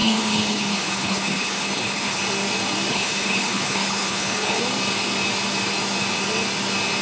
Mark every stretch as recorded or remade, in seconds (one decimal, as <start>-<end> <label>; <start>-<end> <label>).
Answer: 0.0-2.2 remade; 2.2-2.9 recorded; 2.9-4.6 remade; 4.6-7.0 recorded